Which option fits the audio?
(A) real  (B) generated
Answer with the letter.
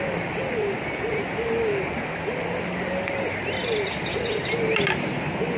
A